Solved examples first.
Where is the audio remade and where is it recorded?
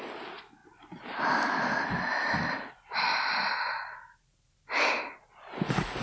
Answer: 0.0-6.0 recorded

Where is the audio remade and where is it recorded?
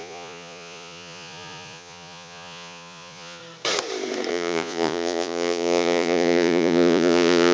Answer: 0.0-3.4 remade; 3.4-4.3 recorded; 4.3-7.5 remade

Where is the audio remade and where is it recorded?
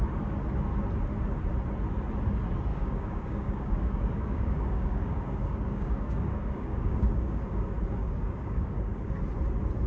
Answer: 0.0-2.7 recorded; 2.7-7.6 remade; 7.6-8.0 recorded; 8.0-9.1 remade; 9.1-9.9 recorded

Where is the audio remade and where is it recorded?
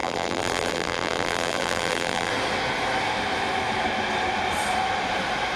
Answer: 0.0-2.3 remade; 2.3-5.6 recorded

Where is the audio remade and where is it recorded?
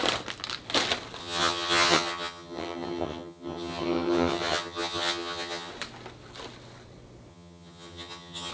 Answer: 0.0-1.2 recorded; 1.2-5.7 remade; 5.7-7.3 recorded; 7.3-8.5 remade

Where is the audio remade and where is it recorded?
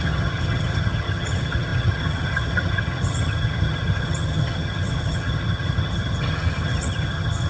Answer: 0.0-7.5 remade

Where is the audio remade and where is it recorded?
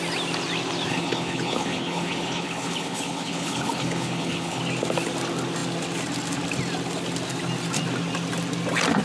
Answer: 0.0-0.9 recorded; 0.9-4.6 remade; 4.6-9.0 recorded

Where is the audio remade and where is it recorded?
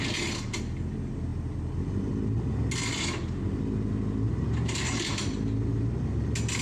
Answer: 0.0-6.6 recorded